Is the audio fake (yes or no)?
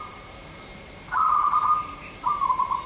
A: yes